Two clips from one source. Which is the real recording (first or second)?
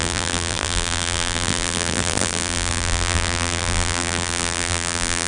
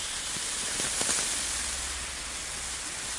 second